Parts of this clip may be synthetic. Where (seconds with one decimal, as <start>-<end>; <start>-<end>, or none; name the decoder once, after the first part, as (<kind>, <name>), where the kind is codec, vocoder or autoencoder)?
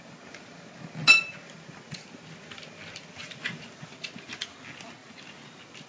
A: none